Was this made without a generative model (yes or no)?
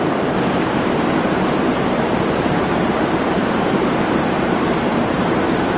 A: no